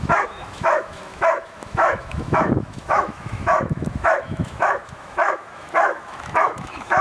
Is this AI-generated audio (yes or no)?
yes